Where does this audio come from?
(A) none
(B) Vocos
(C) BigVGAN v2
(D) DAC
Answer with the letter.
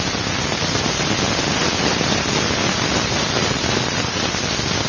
A